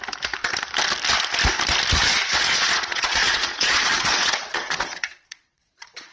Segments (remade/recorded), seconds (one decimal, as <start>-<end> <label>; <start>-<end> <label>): 0.0-2.1 recorded; 2.1-6.1 remade